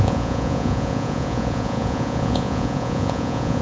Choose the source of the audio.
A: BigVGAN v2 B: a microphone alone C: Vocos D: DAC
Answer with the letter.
C